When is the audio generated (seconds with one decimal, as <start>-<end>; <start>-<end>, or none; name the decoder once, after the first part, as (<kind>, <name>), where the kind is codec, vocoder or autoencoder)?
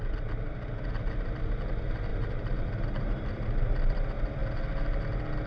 2.1-3.3 (vocoder, BigVGAN v2)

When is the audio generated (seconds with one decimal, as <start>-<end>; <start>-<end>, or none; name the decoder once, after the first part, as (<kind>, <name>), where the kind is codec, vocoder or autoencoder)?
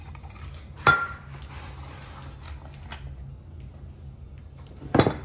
0.8-1.3 (vocoder, BigVGAN v2); 4.4-5.2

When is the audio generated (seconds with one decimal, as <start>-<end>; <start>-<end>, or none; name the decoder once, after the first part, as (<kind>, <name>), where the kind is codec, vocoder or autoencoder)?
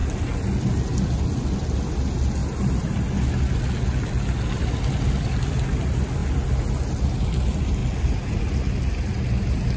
2.4-3.0 (vocoder, BigVGAN v2)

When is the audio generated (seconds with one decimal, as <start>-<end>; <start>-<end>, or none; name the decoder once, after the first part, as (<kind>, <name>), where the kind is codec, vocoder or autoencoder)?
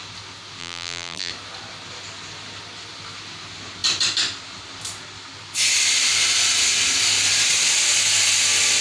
0.6-1.3 (vocoder, BigVGAN v2)